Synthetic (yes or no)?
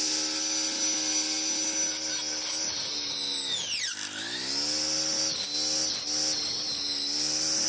no